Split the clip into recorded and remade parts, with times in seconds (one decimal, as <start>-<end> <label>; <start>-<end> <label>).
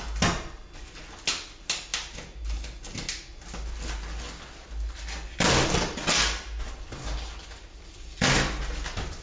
0.0-9.2 recorded